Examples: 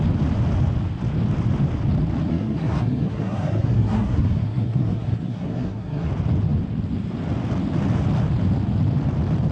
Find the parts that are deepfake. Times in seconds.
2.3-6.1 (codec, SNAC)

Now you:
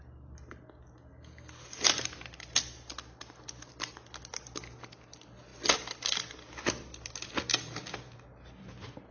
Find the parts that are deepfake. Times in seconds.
none